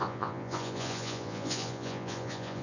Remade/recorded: remade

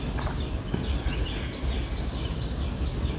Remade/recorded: recorded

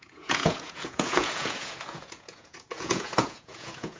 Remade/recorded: remade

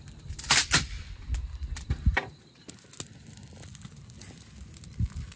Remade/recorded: recorded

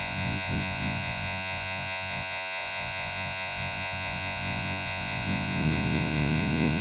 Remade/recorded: remade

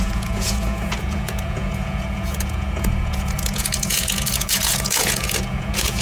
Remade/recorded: remade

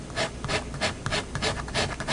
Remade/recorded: recorded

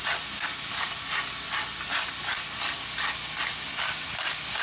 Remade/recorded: recorded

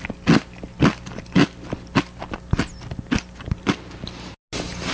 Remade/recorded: recorded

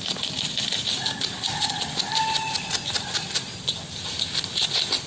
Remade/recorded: recorded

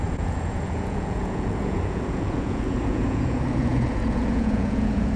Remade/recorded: remade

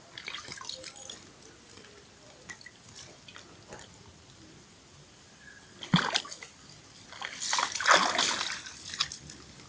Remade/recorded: recorded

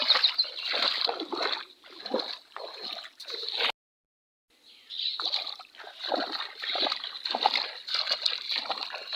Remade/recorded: recorded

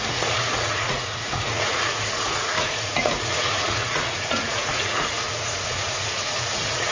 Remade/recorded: remade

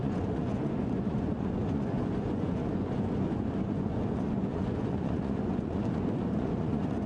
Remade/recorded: remade